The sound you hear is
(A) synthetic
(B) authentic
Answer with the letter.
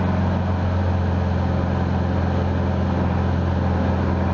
B